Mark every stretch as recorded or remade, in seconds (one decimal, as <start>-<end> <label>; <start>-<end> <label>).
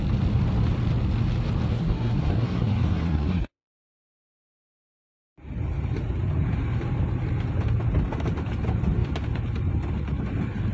0.0-1.7 recorded; 1.7-4.0 remade; 4.0-10.7 recorded